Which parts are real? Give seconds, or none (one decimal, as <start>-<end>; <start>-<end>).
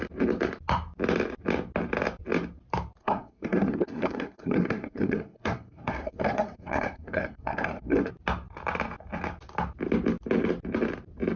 0.0-3.0; 8.1-11.4